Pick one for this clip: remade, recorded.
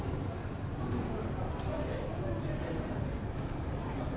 recorded